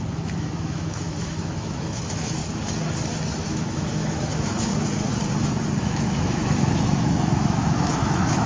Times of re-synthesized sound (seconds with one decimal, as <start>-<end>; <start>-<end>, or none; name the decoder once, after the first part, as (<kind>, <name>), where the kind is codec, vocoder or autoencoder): 0.0-2.4 (autoencoder, DAC-VAE); 3.4-4.7; 5.8-8.5